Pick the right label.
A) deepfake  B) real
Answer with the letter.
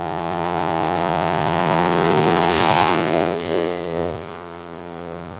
A